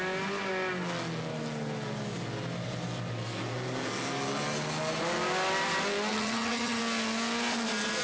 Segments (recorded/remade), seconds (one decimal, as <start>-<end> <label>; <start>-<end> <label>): 0.0-6.1 recorded; 6.1-6.8 remade; 6.8-8.0 recorded